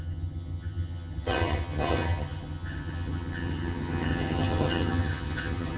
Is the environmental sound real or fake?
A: fake